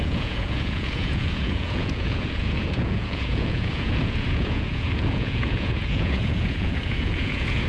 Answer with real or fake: fake